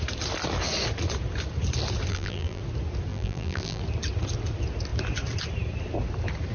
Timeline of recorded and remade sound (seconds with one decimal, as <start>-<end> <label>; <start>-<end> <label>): 0.0-2.1 recorded; 2.1-2.6 remade; 2.6-3.1 recorded; 3.1-3.8 remade; 3.8-6.5 recorded